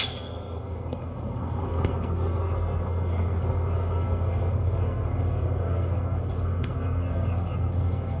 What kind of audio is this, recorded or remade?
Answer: remade